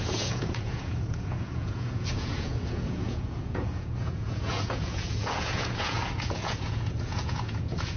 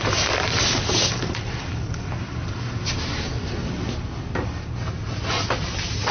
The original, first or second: second